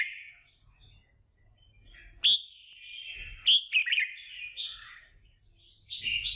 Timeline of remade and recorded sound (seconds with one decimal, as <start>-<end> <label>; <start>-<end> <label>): 0.0-6.4 recorded